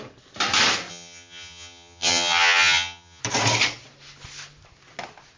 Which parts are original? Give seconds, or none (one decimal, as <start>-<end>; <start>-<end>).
0.0-0.9; 3.2-5.4